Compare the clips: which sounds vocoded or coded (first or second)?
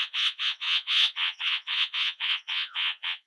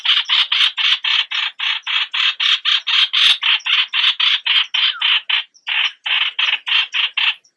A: first